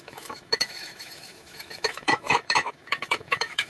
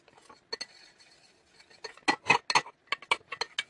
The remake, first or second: first